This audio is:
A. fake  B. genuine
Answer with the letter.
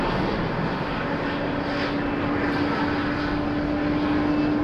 B